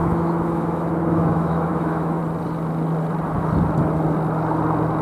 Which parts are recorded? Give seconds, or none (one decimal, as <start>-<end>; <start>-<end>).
2.2-5.0